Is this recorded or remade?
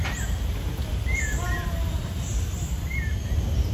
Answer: remade